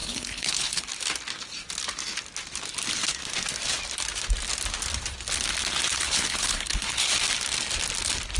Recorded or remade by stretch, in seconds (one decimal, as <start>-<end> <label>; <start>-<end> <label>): 0.0-0.9 remade; 0.9-5.9 recorded; 5.9-7.1 remade; 7.1-8.4 recorded